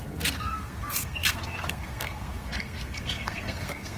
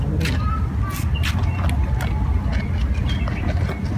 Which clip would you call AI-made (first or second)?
first